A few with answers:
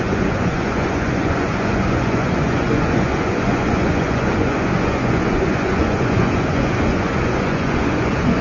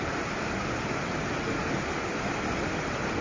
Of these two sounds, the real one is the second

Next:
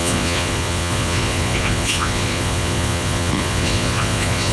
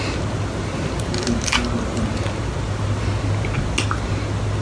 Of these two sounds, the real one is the second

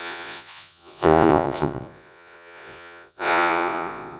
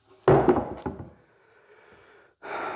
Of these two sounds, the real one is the second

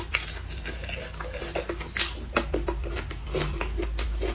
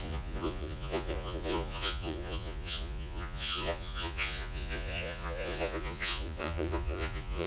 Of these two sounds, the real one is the first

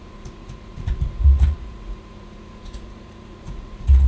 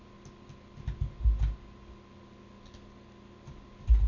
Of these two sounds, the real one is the second